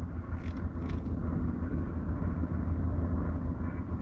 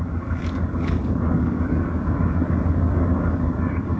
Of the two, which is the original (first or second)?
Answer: first